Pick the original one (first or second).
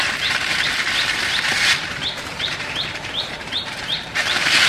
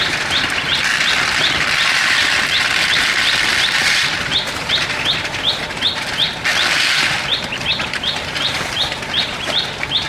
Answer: second